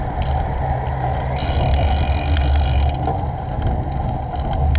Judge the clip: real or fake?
real